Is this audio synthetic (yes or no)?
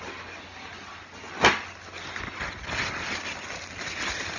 no